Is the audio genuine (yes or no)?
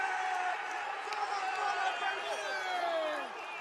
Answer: yes